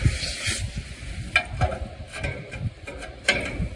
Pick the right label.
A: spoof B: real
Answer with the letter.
B